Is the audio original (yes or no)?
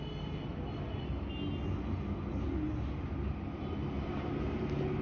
yes